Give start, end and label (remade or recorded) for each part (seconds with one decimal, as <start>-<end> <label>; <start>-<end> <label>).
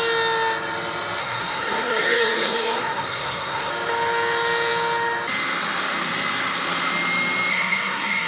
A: 0.0-1.2 recorded; 1.2-3.7 remade; 3.7-7.5 recorded; 7.5-8.3 remade